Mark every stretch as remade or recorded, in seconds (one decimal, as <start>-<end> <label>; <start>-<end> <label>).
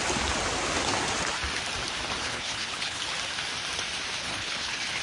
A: 0.0-2.2 recorded; 2.2-3.0 remade; 3.0-4.2 recorded; 4.2-5.0 remade